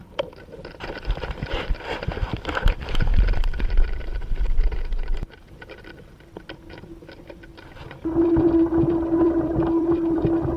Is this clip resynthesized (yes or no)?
yes